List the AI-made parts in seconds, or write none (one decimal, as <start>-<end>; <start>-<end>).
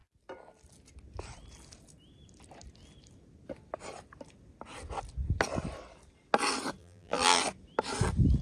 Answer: 6.8-7.4